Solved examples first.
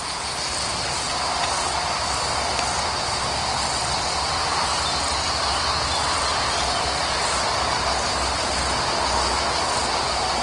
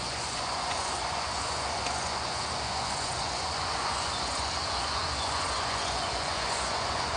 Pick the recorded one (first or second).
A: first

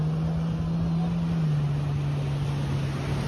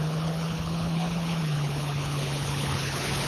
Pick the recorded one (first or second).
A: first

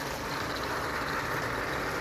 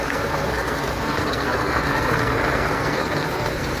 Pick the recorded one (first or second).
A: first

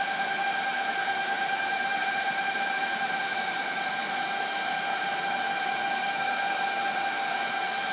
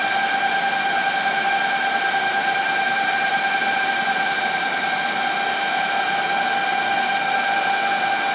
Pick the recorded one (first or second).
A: second